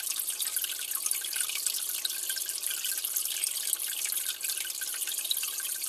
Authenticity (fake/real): real